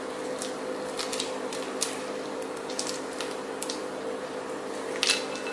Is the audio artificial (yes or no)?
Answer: no